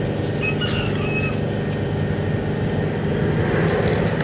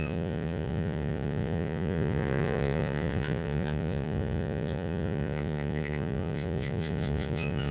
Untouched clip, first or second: first